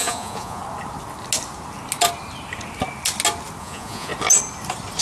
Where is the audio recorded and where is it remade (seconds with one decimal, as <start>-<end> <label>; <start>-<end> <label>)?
0.0-0.6 remade; 0.6-3.6 recorded; 3.6-4.1 remade; 4.1-5.0 recorded